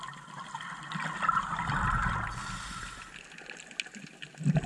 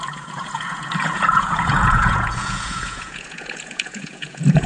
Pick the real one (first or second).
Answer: first